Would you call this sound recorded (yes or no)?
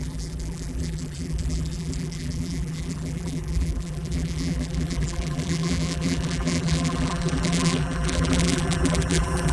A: no